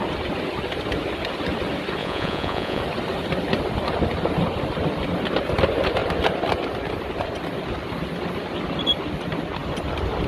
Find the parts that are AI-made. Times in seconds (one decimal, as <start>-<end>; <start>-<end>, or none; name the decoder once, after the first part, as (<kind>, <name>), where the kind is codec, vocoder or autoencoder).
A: 2.0-2.8 (vocoder, Vocos)